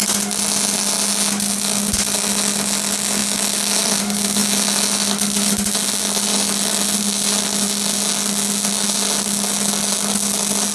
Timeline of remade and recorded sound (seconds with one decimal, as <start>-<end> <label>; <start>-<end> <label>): 0.0-10.7 recorded